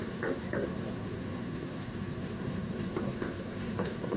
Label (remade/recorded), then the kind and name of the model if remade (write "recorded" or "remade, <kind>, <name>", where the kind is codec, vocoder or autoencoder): remade, codec, SNAC